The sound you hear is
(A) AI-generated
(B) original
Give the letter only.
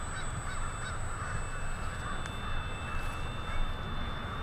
B